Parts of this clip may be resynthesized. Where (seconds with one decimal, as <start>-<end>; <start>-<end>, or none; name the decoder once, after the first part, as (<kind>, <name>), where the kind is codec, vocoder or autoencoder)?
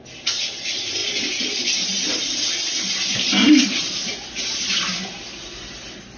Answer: none